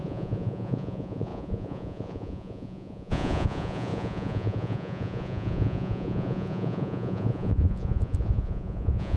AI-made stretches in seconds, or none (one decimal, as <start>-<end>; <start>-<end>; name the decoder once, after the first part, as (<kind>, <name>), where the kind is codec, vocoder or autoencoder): 0.0-9.2 (vocoder, Vocos)